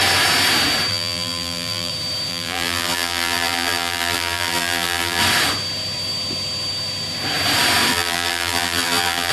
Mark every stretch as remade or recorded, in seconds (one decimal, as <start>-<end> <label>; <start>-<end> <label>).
0.0-0.9 recorded; 0.9-1.9 remade; 1.9-2.3 recorded; 2.3-5.2 remade; 5.2-7.9 recorded; 7.9-9.3 remade